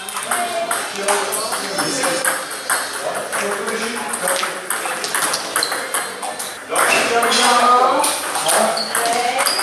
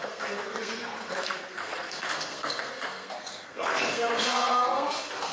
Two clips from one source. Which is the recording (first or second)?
first